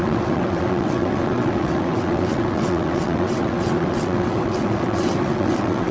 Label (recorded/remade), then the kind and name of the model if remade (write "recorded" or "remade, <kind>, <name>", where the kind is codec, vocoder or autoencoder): remade, vocoder, WaveNeXt